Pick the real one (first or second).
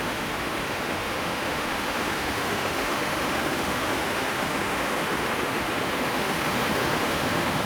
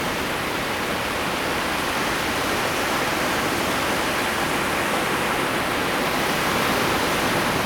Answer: second